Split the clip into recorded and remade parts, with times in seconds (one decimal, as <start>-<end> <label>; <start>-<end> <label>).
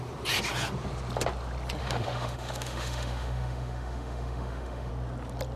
0.0-1.8 recorded; 1.8-4.9 remade; 4.9-5.6 recorded